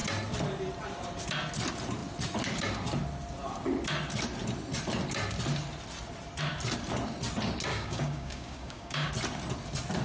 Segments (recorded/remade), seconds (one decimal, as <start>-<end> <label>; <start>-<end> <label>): 0.0-7.7 recorded; 7.7-9.1 remade; 9.1-10.0 recorded